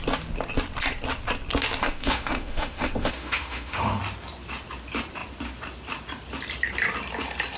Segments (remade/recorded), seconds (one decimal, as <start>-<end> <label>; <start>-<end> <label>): 0.0-1.8 recorded; 1.8-4.0 remade; 4.0-7.6 recorded